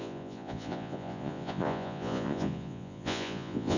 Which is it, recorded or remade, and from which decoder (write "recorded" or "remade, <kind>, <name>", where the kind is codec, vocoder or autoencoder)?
remade, vocoder, Vocos